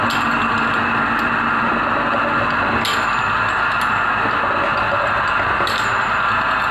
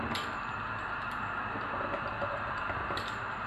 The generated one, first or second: second